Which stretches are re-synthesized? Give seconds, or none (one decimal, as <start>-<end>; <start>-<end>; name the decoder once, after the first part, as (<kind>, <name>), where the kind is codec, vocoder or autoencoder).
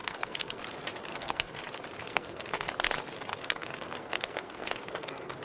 0.0-0.6 (codec, SNAC); 1.1-1.6; 2.0-2.7; 3.3-5.4